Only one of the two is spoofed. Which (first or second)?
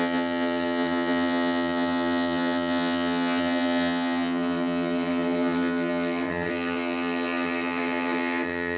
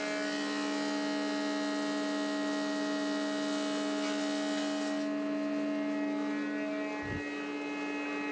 first